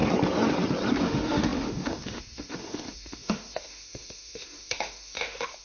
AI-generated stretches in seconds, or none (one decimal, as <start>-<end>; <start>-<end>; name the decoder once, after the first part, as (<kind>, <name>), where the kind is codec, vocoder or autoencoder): 1.0-5.6 (autoencoder, DAC-VAE)